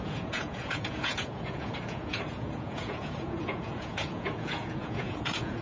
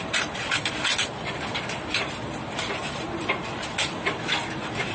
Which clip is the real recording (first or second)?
second